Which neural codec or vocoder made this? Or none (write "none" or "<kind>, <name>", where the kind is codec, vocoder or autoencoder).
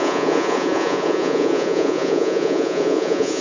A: vocoder, Vocos